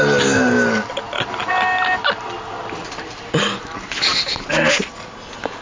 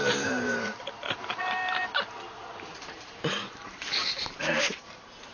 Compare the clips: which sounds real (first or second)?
first